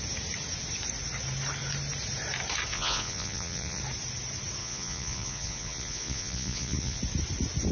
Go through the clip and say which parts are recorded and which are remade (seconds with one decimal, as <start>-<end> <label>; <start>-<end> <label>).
0.0-2.7 recorded; 2.7-3.8 remade; 3.8-4.6 recorded; 4.6-7.0 remade; 7.0-7.7 recorded